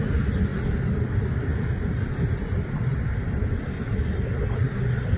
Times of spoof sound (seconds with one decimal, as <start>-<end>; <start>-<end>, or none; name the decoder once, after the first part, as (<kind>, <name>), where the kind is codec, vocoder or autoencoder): 0.5-3.6 (vocoder, BigVGAN v2)